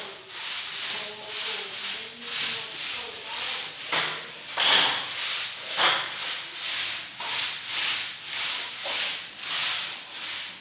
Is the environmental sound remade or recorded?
recorded